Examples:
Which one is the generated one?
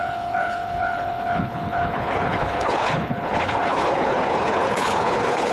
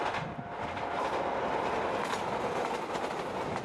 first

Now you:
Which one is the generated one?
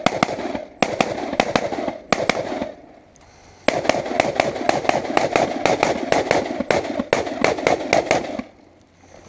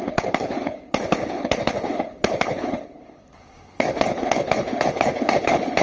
second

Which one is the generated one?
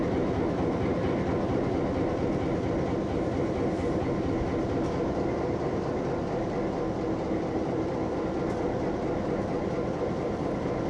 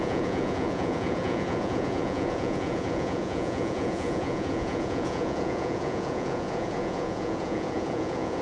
second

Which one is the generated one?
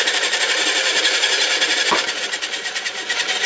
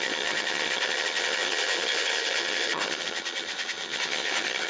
second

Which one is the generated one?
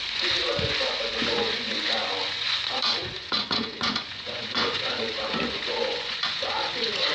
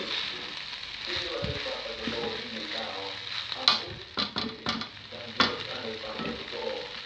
first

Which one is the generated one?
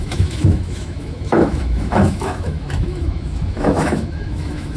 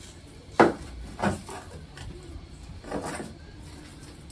first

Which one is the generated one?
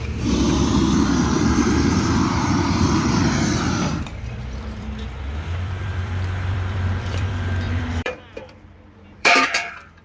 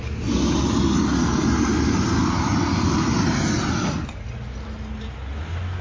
first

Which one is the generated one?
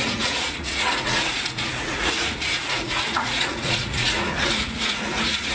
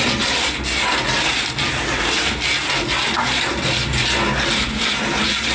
first